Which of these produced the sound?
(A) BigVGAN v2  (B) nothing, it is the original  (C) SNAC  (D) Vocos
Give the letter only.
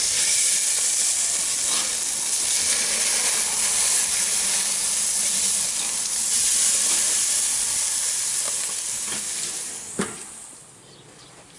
B